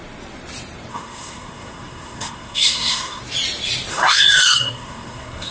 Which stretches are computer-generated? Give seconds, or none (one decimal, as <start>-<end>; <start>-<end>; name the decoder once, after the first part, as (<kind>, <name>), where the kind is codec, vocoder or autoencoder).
0.9-3.2 (codec, SNAC); 3.9-5.5